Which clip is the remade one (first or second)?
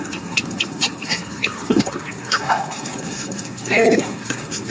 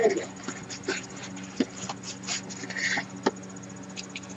first